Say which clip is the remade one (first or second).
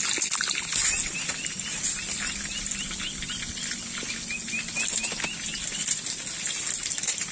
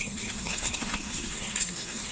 second